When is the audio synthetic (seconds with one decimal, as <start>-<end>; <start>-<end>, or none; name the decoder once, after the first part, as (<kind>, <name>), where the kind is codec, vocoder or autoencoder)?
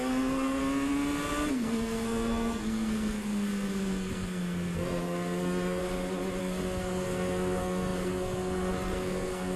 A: 0.0-0.6 (codec, SNAC); 1.5-5.8; 6.4-9.6